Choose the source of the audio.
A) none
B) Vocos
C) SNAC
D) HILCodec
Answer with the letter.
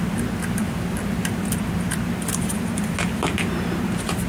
A